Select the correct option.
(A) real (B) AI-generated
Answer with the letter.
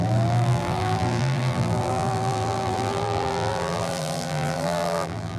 B